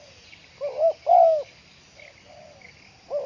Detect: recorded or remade recorded